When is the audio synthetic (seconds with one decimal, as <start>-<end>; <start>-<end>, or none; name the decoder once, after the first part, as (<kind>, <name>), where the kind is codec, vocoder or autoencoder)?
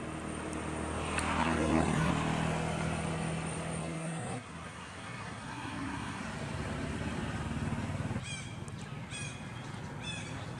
1.4-2.1 (codec, SNAC); 3.8-6.2